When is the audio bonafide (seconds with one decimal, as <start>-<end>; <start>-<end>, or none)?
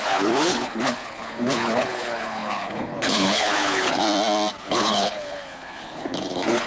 4.0-4.6